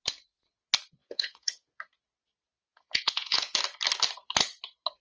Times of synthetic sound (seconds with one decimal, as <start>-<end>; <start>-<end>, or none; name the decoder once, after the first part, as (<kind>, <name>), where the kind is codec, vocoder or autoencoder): 1.0-1.8 (vocoder, Vocos); 2.5-3.6